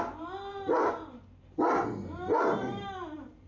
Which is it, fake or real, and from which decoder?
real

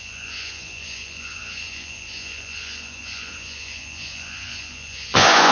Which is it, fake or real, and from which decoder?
fake, vocoder, Vocos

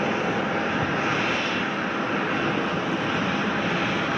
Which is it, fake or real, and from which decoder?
real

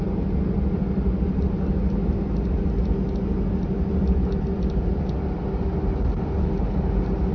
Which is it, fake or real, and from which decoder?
real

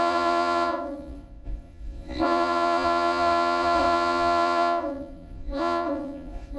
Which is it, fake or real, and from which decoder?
fake, vocoder, Vocos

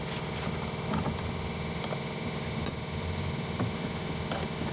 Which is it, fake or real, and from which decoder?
real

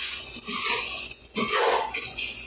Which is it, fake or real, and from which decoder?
fake, vocoder, Vocos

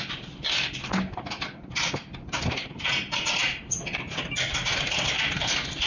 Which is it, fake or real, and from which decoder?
real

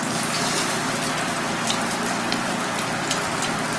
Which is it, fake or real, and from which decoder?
real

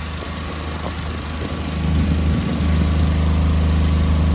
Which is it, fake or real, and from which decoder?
real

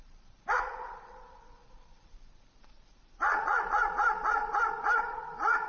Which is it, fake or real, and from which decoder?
fake, vocoder, Vocos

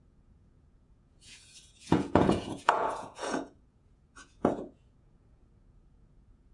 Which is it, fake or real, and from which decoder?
fake, vocoder, Vocos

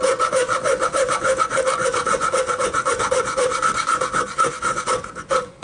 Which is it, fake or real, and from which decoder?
fake, vocoder, Vocos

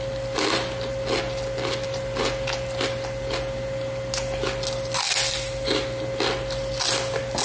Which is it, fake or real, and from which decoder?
real